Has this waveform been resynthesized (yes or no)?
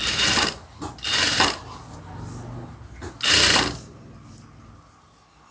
no